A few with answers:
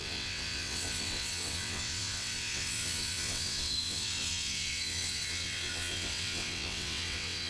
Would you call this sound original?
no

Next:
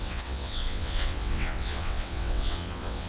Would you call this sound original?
no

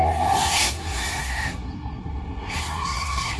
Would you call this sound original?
no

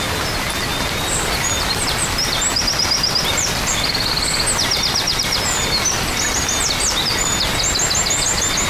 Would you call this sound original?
yes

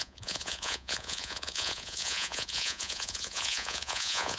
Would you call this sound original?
no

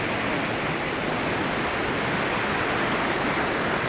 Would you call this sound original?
yes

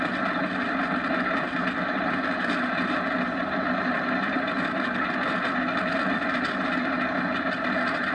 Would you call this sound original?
yes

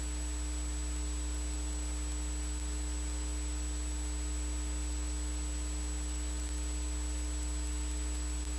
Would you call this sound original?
yes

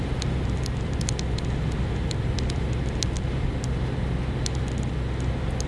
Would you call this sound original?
yes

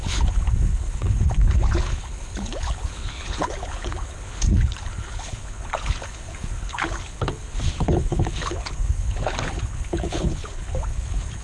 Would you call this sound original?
no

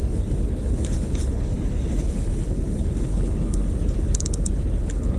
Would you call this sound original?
no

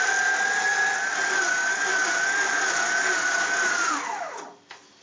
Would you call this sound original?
yes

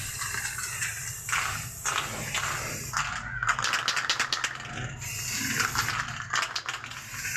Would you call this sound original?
yes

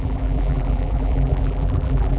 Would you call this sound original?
no